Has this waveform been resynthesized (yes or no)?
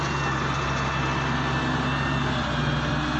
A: no